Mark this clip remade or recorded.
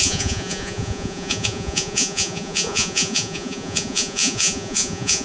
remade